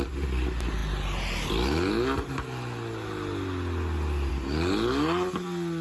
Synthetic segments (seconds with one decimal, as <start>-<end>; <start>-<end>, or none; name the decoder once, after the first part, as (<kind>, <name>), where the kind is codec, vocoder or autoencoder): none